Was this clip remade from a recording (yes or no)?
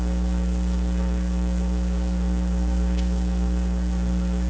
yes